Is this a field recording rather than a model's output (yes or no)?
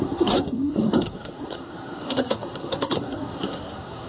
no